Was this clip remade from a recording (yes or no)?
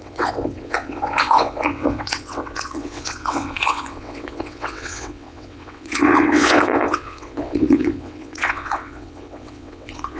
yes